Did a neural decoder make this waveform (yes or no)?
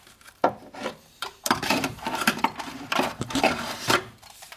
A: yes